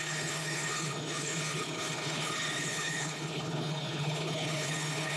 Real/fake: fake